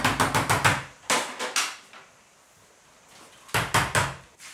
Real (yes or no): yes